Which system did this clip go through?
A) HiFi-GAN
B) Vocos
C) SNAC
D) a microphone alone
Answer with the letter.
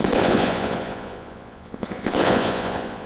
B